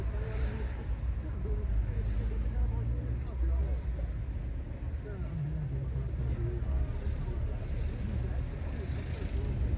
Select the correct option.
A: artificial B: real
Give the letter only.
B